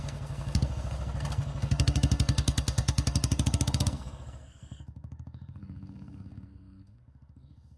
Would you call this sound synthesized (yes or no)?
yes